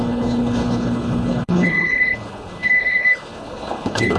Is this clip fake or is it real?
fake